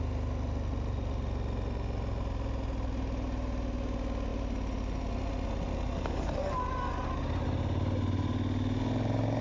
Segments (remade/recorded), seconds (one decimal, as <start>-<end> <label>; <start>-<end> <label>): 0.0-9.4 recorded